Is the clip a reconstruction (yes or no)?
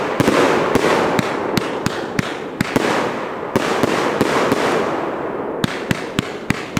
no